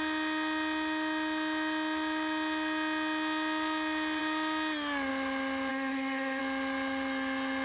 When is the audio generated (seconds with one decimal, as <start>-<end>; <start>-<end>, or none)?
5.7-6.4